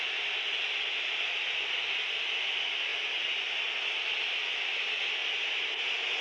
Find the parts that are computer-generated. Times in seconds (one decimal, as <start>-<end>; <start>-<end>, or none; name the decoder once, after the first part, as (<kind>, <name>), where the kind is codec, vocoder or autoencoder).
none